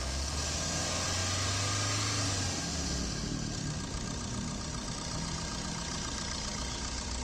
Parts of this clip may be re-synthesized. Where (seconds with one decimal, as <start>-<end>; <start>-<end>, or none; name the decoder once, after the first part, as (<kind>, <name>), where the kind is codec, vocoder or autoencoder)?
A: none